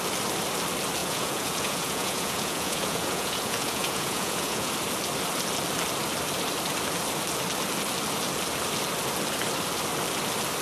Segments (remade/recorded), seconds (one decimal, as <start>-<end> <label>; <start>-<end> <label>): 0.0-1.0 recorded; 1.0-4.7 remade; 4.7-10.6 recorded